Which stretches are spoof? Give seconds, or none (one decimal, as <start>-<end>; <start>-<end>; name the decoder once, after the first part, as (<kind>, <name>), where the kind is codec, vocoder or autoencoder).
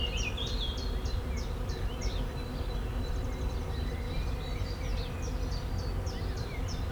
0.0-4.9 (vocoder, BigVGAN v2); 6.2-6.9